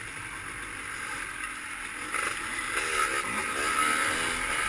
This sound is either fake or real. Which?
real